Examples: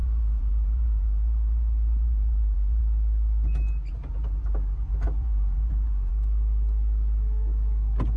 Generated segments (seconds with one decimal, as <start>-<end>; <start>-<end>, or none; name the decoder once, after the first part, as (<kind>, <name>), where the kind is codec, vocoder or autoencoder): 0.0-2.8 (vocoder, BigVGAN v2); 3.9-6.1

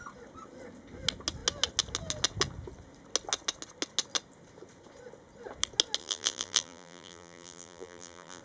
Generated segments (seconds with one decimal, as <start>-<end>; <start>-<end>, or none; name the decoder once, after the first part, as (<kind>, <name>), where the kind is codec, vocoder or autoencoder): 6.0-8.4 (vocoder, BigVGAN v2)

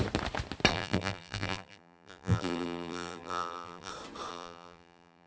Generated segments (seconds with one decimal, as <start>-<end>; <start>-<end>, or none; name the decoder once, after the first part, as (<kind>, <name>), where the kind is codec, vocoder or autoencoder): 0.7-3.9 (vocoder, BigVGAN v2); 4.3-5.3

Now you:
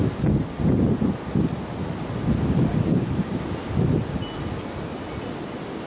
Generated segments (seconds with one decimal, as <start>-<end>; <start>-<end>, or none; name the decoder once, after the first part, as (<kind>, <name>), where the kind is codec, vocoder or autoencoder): 2.7-3.4 (vocoder, BigVGAN v2)